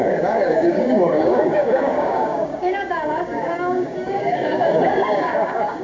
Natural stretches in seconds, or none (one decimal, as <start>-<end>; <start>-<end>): none